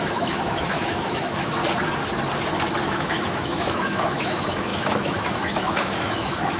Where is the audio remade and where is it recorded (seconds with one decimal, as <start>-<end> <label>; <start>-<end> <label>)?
0.0-1.6 remade; 1.6-2.8 recorded; 2.8-6.6 remade